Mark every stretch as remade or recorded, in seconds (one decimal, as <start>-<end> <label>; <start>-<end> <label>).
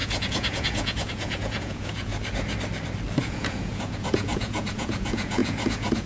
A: 0.0-2.1 remade; 2.1-3.2 recorded; 3.2-6.1 remade